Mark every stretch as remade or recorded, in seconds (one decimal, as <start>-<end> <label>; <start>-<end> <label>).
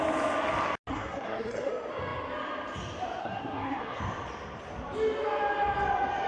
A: 0.0-0.9 recorded; 0.9-1.7 remade; 1.7-3.2 recorded; 3.2-4.0 remade; 4.0-6.3 recorded